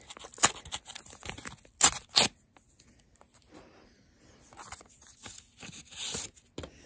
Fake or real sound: real